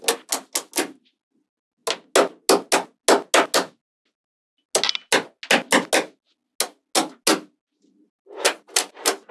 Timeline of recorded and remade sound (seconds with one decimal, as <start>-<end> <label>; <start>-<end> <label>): 0.0-9.3 recorded